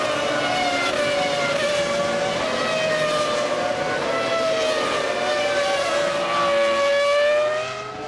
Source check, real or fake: real